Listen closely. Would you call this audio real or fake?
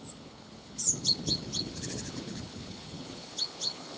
fake